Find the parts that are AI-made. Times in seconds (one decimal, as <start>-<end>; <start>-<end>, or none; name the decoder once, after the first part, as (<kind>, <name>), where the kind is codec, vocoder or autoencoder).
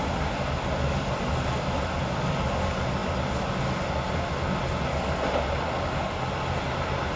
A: none